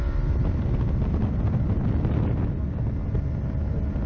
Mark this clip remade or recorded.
recorded